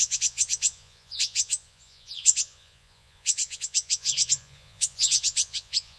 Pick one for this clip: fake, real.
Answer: fake